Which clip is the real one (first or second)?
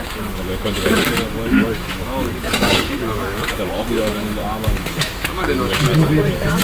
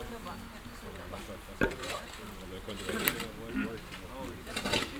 second